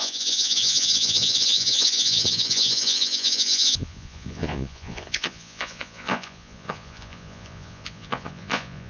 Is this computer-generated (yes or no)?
yes